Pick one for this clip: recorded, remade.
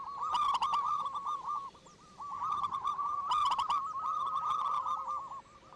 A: recorded